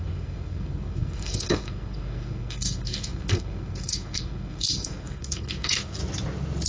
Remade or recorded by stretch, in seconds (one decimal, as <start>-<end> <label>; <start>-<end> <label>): 0.0-6.0 remade; 6.0-6.7 recorded